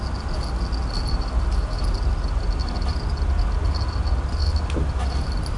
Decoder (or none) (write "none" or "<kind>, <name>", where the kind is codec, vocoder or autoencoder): none